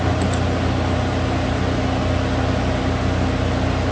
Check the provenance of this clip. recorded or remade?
recorded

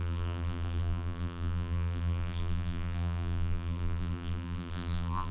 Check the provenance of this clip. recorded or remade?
remade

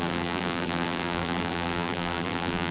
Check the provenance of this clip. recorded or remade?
remade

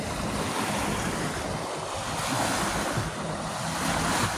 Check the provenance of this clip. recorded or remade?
recorded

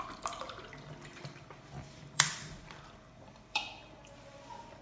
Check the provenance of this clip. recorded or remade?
remade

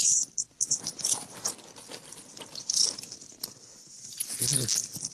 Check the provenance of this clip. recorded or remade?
recorded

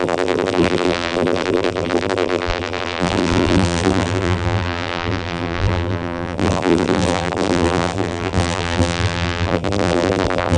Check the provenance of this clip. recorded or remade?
remade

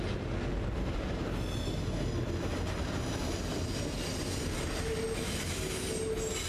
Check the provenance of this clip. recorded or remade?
recorded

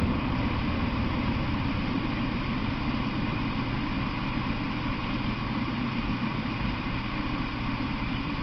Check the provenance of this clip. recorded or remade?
remade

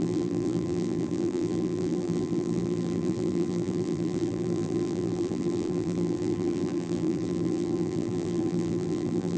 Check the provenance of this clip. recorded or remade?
remade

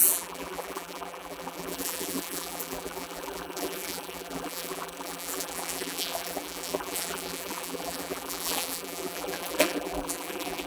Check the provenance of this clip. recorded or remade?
remade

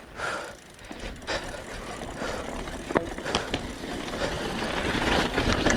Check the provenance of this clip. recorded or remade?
recorded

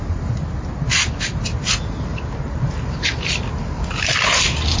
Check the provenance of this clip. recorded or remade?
recorded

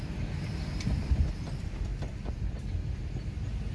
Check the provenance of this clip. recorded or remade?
remade